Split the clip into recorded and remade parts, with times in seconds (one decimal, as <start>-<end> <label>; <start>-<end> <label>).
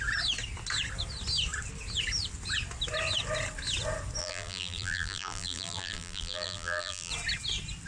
0.0-4.2 recorded; 4.2-7.1 remade; 7.1-7.9 recorded